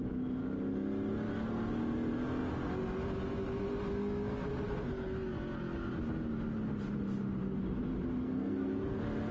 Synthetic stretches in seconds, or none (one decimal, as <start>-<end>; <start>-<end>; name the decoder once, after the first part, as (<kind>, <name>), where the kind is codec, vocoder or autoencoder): 8.2-8.9 (codec, SNAC)